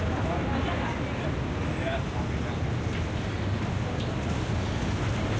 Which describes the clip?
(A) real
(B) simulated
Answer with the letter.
A